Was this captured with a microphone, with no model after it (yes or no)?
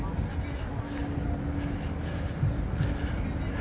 yes